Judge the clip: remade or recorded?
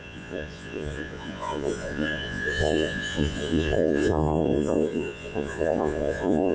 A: remade